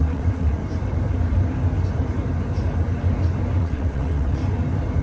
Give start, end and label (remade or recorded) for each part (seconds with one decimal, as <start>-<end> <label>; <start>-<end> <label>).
0.0-0.6 remade; 0.6-3.6 recorded; 3.6-4.4 remade; 4.4-5.0 recorded